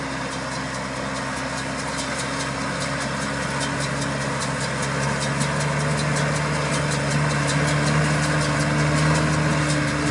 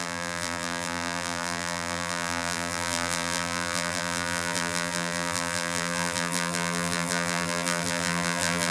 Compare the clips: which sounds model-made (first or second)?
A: second